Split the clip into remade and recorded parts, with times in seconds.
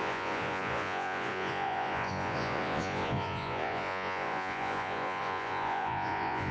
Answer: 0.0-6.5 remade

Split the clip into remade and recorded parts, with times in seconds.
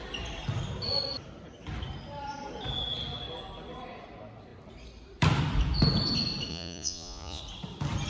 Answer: 0.0-6.5 recorded; 6.5-7.4 remade; 7.4-8.1 recorded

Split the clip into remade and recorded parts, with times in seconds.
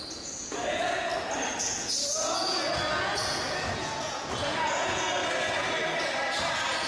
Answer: 0.0-1.1 remade; 1.1-1.6 recorded; 1.6-5.2 remade; 5.2-6.9 recorded